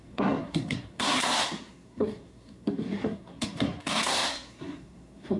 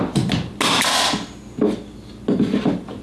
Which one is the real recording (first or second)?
second